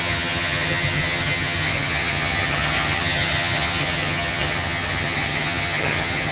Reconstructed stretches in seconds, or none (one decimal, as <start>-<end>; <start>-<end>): 0.0-6.3